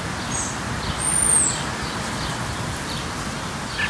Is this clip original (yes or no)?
yes